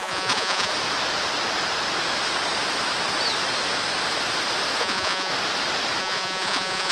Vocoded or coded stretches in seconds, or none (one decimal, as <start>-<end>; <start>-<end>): 0.0-0.7; 4.8-5.3; 6.0-6.9